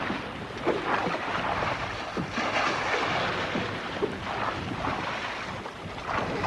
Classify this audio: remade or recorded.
recorded